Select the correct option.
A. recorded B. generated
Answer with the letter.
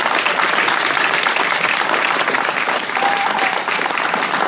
A